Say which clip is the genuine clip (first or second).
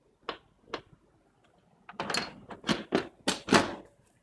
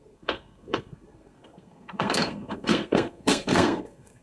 first